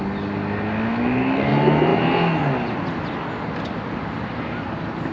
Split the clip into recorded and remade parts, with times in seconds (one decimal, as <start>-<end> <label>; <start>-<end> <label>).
0.0-0.9 recorded; 0.9-1.5 remade; 1.5-5.1 recorded